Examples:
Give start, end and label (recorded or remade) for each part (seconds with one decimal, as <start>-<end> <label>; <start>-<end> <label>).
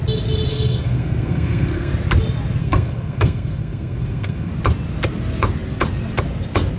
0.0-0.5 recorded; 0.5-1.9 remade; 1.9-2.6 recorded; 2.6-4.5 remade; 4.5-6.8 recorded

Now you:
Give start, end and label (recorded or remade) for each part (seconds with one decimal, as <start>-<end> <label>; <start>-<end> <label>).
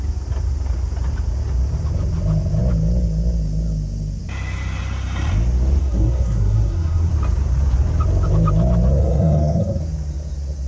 0.0-5.8 recorded; 5.8-7.1 remade; 7.1-9.0 recorded; 9.0-9.8 remade; 9.8-10.7 recorded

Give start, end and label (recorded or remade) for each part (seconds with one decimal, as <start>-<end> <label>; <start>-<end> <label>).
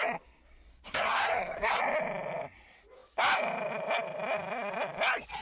0.0-0.7 recorded; 0.7-1.8 remade; 1.8-5.4 recorded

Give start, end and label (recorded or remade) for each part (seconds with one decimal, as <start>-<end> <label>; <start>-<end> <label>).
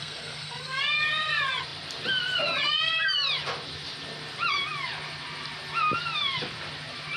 0.0-0.8 remade; 0.8-7.2 recorded